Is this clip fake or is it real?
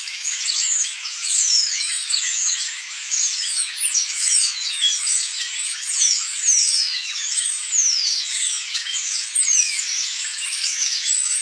fake